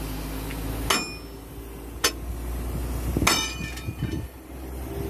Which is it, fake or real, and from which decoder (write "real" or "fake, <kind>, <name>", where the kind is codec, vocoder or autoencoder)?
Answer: real